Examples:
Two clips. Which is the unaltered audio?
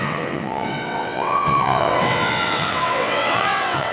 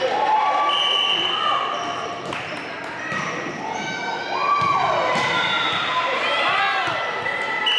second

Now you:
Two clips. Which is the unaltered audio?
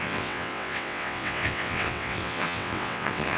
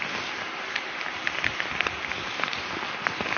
second